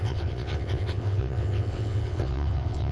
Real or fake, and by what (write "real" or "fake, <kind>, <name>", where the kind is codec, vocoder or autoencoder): fake, vocoder, WaveNeXt